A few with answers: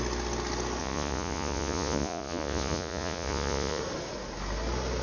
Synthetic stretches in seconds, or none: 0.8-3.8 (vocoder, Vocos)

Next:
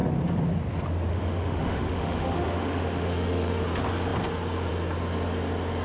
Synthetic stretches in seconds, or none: 1.1-3.6 (autoencoder, DAC-VAE)

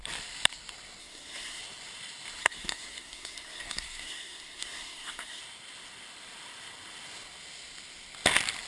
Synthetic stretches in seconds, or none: 1.0-1.6 (codec, SNAC); 2.4-5.4

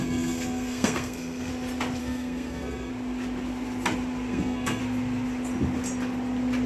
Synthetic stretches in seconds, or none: 0.0-1.5 (codec, SNAC); 2.0-2.9; 4.3-4.8

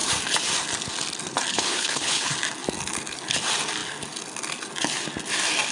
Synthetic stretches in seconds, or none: 1.5-2.3 (codec, HILCodec)

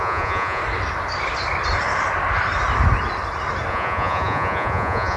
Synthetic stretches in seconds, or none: 0.0-0.6 (vocoder, Vocos); 3.7-5.2

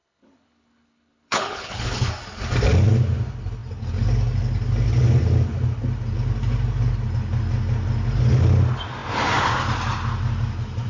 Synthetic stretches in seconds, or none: 0.0-2.1 (codec, HILCodec)